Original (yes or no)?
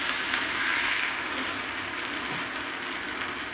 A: yes